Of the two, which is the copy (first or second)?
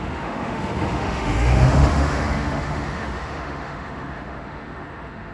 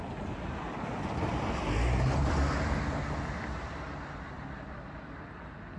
first